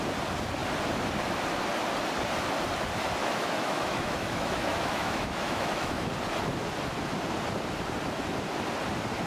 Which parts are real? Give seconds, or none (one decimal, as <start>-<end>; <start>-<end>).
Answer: 0.0-3.2; 6.1-9.3